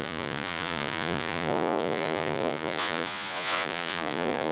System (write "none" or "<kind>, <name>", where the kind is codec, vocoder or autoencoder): vocoder, Vocos